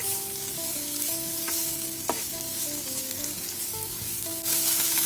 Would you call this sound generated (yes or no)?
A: yes